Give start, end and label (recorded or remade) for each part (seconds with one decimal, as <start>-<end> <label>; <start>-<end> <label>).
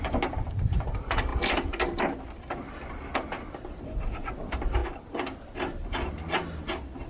0.0-7.1 recorded